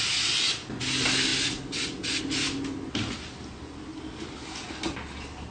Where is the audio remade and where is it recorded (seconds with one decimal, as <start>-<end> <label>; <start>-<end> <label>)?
0.0-5.5 recorded